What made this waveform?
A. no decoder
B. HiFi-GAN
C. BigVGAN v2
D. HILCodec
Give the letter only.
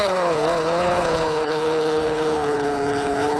D